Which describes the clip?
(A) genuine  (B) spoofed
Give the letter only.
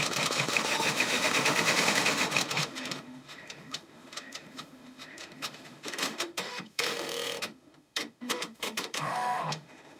B